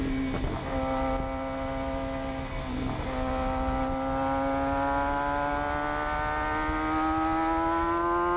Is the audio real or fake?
real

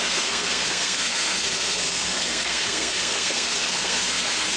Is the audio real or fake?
fake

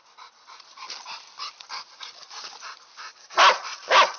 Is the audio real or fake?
real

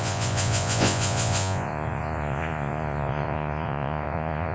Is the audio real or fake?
fake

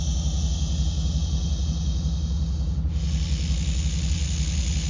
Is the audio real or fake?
real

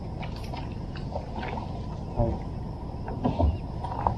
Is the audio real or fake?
real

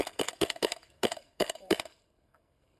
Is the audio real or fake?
fake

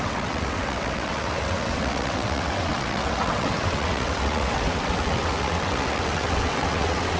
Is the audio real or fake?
fake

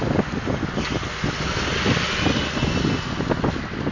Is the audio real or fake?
real